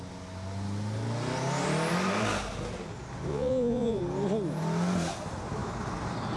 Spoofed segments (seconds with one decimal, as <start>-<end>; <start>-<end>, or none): 3.3-4.0